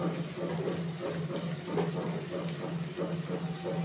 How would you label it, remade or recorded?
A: recorded